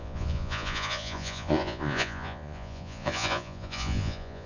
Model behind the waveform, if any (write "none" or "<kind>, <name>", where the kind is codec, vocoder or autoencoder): vocoder, Vocos